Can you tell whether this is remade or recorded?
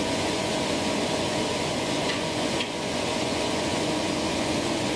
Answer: remade